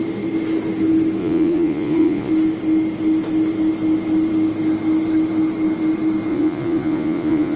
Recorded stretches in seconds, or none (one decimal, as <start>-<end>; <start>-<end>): 0.0-1.2; 2.3-6.3